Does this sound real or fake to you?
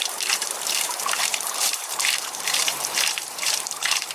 fake